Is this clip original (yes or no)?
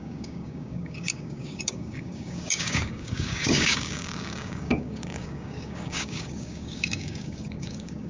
no